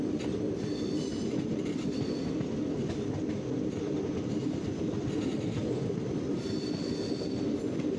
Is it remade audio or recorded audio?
recorded